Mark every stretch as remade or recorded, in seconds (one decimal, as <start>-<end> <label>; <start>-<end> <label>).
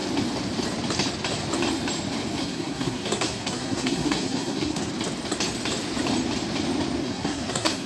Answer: 0.0-2.4 recorded; 2.4-4.9 remade; 4.9-7.0 recorded; 7.0-7.9 remade